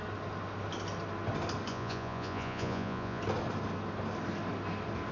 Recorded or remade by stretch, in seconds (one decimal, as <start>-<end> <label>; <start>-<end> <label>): 0.0-1.7 recorded; 1.7-3.2 remade; 3.2-5.1 recorded